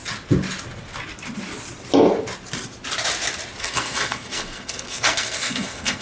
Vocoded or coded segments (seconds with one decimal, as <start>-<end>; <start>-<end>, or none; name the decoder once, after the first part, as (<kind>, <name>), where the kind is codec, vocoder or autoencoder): 3.6-6.0 (codec, SNAC)